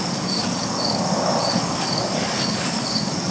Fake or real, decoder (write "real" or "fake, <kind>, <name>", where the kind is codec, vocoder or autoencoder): fake, codec, DAC